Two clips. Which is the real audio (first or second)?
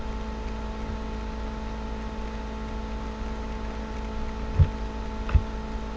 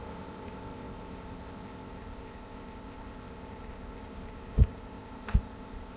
first